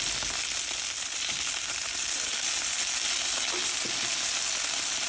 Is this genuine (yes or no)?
yes